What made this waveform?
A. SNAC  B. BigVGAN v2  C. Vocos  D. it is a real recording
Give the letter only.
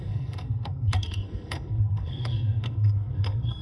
A